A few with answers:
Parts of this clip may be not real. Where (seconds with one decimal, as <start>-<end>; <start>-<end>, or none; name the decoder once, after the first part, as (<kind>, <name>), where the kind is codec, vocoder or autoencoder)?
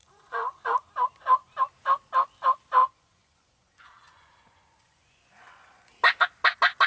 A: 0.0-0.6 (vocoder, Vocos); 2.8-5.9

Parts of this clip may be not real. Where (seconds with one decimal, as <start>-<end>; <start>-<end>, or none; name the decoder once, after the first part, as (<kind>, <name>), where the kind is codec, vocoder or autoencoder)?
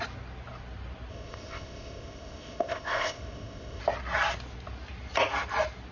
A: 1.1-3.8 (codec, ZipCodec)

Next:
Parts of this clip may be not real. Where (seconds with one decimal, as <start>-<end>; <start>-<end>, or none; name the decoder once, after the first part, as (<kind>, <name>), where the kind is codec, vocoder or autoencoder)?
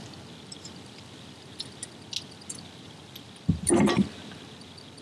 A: none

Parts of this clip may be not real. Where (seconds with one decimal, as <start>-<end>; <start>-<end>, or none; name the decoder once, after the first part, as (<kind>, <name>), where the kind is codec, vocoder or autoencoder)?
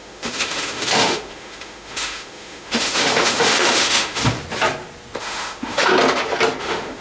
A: 0.0-4.2 (autoencoder, DAC-VAE); 5.2-5.9; 6.6-7.0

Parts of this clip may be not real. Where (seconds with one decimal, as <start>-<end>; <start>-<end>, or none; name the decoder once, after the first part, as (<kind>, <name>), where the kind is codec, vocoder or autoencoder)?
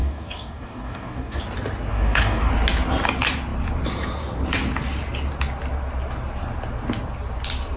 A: 0.0-1.4 (codec, DAC); 1.9-2.5